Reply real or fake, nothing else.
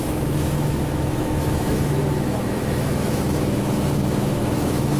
fake